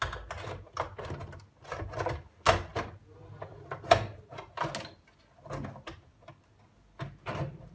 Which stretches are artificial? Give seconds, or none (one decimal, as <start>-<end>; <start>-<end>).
none